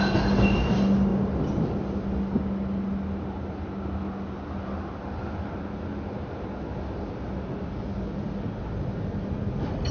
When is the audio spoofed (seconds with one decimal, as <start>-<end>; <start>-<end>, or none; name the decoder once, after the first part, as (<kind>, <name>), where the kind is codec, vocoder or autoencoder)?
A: none